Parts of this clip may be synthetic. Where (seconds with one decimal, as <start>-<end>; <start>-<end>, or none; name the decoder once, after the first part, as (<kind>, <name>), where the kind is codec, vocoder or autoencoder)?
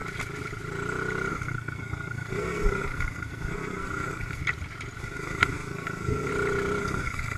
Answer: 1.3-4.4 (codec, SNAC); 5.0-6.3; 6.8-7.4